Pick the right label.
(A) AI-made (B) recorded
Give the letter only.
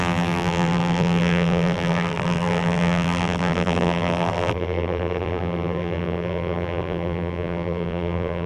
A